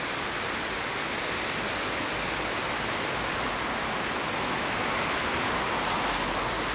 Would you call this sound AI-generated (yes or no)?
no